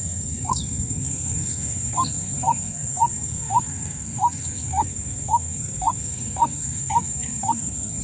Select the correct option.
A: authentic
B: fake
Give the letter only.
B